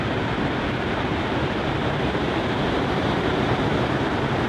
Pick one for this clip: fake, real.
fake